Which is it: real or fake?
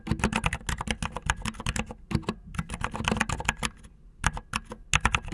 real